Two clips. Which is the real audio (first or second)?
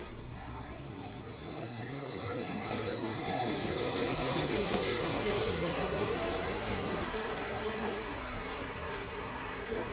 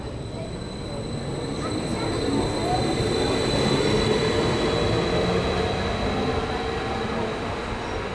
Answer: second